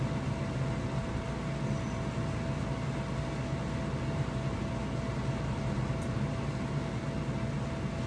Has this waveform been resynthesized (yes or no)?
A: no